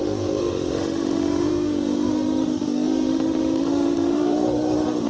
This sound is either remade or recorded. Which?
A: remade